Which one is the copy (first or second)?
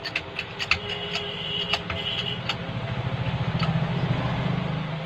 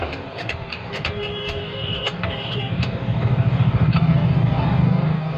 second